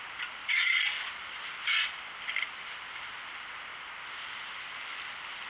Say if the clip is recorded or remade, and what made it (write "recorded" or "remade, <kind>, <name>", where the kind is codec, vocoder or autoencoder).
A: remade, vocoder, BigVGAN v2